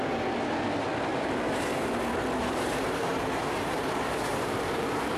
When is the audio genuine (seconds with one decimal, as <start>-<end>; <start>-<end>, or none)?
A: 0.0-1.1; 1.8-2.4

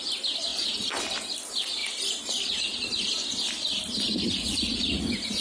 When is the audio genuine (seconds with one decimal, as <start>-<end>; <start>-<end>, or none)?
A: 0.0-0.5; 1.0-1.8; 5.0-5.4

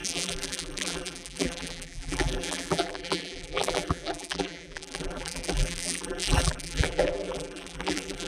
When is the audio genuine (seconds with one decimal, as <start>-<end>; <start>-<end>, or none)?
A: none

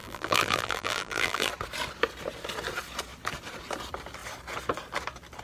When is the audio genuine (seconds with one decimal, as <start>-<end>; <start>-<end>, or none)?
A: 1.5-5.4

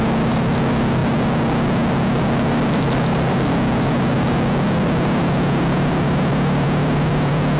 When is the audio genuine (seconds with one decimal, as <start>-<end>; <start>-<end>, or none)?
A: 1.0-5.6

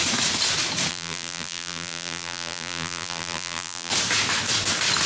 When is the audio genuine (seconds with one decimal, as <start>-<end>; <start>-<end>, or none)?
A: 0.0-0.9; 3.9-5.1

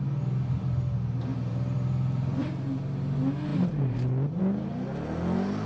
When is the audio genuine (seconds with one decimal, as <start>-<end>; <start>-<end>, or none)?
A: 0.0-1.3; 2.6-3.5; 4.4-5.7